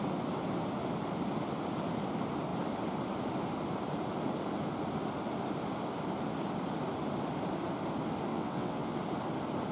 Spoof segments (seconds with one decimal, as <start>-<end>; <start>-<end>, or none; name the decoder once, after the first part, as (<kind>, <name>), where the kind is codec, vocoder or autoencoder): 8.3-9.0 (vocoder, WaveNeXt)